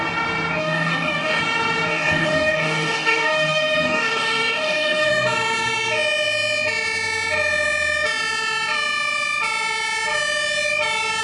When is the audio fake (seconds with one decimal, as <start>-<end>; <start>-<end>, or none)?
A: 0.6-1.4; 1.9-5.1